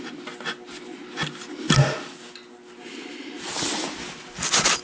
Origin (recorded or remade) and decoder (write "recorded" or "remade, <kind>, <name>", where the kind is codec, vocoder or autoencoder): recorded